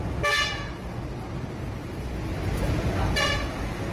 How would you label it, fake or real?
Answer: real